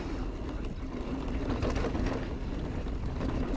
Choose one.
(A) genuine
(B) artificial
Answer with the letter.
A